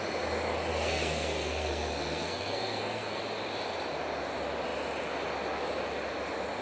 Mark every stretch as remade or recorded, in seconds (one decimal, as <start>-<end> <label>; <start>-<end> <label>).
0.0-0.7 recorded; 0.7-3.2 remade; 3.2-6.6 recorded